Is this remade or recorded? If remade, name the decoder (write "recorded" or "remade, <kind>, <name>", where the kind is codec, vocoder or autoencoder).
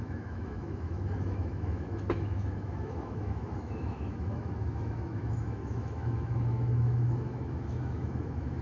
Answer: remade, autoencoder, DAC-VAE